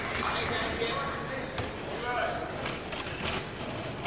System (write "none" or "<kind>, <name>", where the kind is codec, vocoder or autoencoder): none